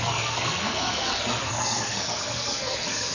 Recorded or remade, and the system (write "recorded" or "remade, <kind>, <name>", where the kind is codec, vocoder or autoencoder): remade, codec, SNAC